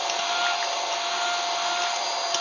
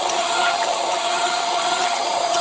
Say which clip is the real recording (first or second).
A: first